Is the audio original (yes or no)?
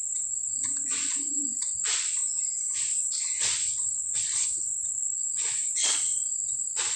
no